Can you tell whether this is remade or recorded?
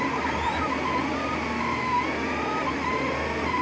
recorded